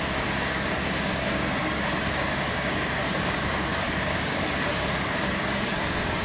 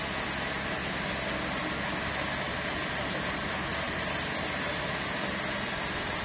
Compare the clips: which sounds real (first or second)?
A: second